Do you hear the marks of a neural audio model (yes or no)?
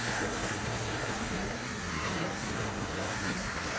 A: yes